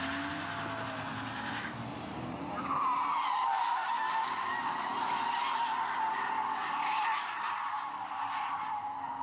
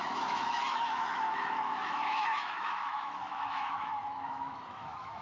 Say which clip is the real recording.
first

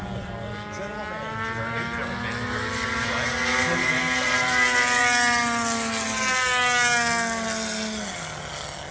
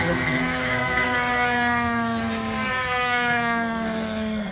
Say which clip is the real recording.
first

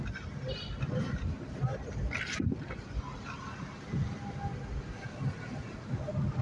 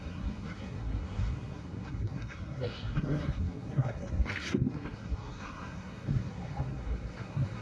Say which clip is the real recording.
first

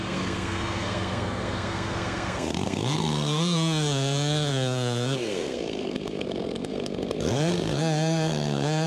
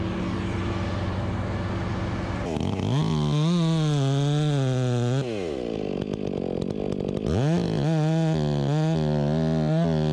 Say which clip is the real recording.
second